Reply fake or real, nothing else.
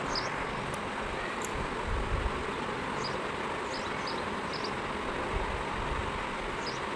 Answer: real